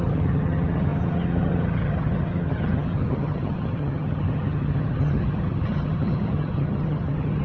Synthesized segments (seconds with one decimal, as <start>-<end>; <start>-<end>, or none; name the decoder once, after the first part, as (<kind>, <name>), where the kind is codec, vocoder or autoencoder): 0.0-7.4 (vocoder, HiFi-GAN)